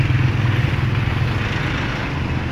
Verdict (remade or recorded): recorded